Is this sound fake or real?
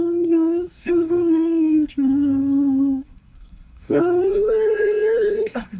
fake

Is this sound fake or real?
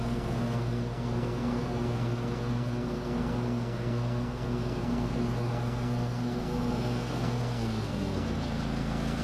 fake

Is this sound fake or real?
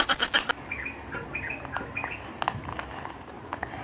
real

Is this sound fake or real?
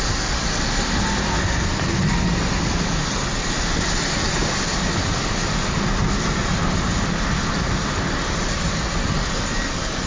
real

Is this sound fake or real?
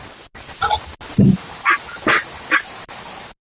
real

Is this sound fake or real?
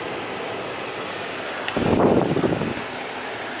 real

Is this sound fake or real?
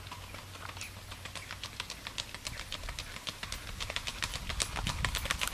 real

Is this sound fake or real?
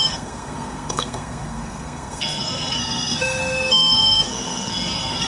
fake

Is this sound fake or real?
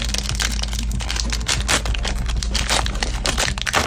real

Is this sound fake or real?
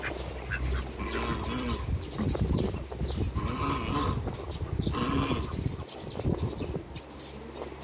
real